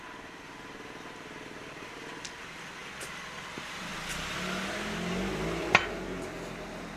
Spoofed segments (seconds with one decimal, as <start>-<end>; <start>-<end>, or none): none

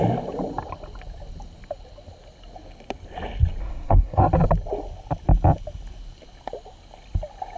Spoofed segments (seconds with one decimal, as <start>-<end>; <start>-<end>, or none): 3.6-4.2

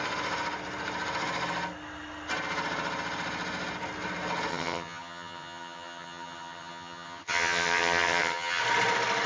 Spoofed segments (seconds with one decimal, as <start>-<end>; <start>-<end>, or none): 4.5-8.6

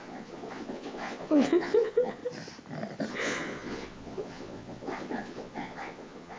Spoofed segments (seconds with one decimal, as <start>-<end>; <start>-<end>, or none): 0.0-2.2; 3.1-6.4

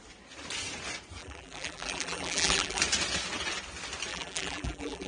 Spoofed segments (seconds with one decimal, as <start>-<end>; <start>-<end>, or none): 1.2-2.8; 4.1-5.1

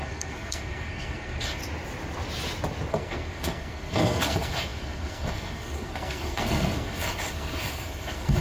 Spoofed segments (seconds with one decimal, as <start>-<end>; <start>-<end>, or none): 0.0-1.6; 2.9-8.4